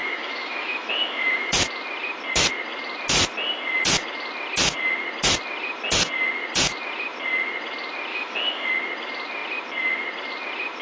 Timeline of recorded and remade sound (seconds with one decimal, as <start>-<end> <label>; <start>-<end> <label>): 0.0-1.6 remade; 1.6-8.1 recorded; 8.1-8.7 remade; 8.7-10.8 recorded